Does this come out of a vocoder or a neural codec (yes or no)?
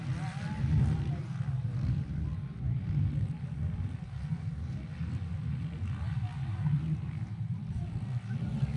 no